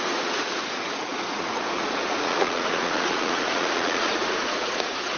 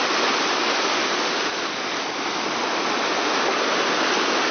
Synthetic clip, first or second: first